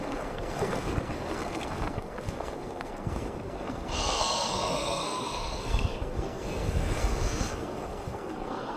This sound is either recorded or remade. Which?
remade